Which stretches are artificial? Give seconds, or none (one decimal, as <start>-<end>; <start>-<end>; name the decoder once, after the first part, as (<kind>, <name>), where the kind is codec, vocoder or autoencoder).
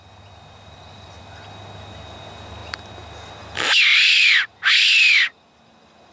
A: 3.9-4.7 (vocoder, BigVGAN v2)